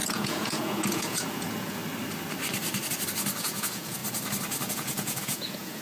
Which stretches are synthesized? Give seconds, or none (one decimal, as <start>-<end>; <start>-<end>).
0.0-1.8; 3.4-4.0; 4.7-5.8